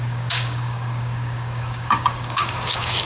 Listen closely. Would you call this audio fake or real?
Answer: fake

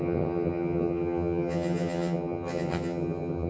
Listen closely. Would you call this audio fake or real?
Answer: fake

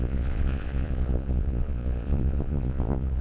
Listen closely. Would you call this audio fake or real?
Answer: fake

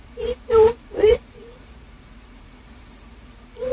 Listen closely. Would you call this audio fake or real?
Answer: fake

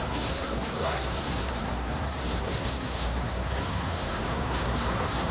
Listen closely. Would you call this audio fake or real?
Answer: fake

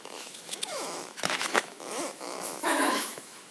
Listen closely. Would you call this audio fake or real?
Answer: fake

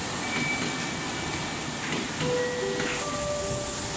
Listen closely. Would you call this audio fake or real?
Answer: real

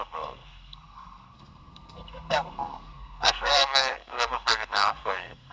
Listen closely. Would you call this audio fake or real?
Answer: fake